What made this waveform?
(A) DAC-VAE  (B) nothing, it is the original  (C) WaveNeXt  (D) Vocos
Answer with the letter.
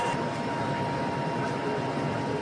B